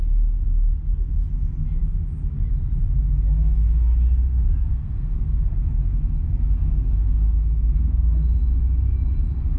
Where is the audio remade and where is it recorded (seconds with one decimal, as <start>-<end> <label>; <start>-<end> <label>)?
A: 0.0-4.7 recorded; 4.7-8.4 remade; 8.4-9.6 recorded